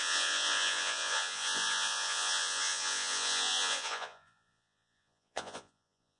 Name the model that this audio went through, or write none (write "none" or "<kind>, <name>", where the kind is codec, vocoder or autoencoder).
vocoder, Vocos